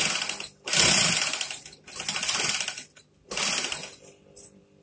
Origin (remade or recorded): recorded